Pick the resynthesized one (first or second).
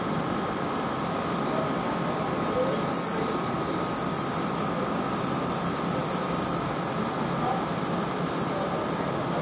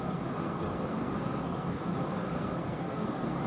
second